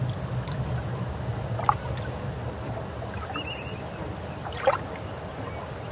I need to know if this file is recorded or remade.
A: recorded